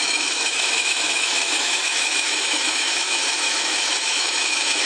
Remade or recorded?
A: remade